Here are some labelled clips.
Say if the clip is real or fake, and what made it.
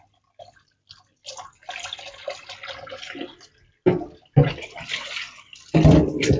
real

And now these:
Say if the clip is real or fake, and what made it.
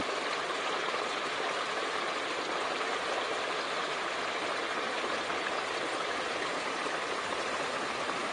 fake, vocoder, BigVGAN v2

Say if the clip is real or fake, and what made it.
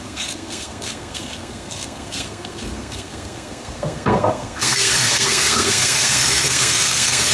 fake, codec, SNAC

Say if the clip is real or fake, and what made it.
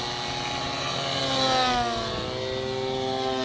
real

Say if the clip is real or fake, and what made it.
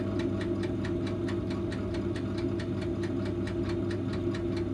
real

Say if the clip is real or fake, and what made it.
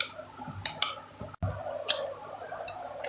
real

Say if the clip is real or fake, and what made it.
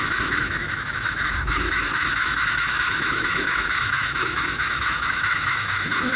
fake, autoencoder, DAC-VAE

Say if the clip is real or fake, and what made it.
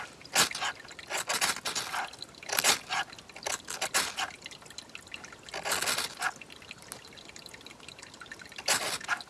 real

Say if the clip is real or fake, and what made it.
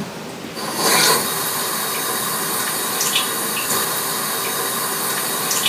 real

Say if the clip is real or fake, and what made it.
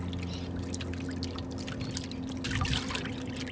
real